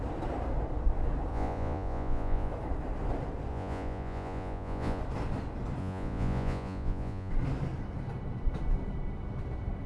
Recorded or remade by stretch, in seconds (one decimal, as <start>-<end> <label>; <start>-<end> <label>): 0.0-1.3 recorded; 1.3-2.5 remade; 2.5-3.5 recorded; 3.5-5.0 remade; 5.0-5.8 recorded; 5.8-7.3 remade; 7.3-9.9 recorded